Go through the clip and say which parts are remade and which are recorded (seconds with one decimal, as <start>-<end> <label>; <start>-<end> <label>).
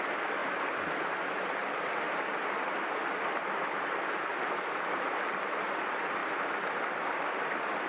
0.0-7.9 recorded